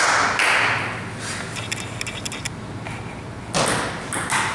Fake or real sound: real